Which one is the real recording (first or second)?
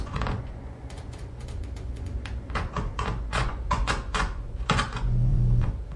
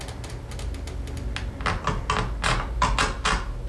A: second